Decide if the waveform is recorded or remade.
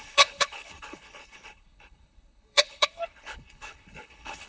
remade